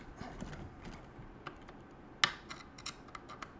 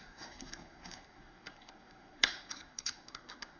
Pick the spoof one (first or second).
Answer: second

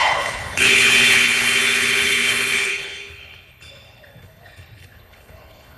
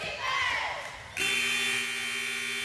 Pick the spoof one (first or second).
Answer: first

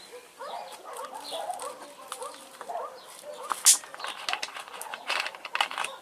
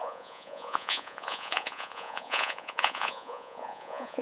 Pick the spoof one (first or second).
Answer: second